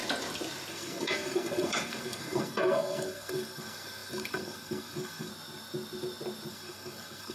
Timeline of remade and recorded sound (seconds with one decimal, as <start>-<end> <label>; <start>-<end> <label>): 0.0-0.7 recorded; 0.7-5.3 remade; 5.3-6.5 recorded; 6.5-7.3 remade